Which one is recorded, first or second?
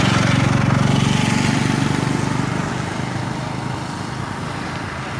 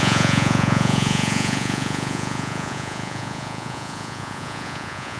first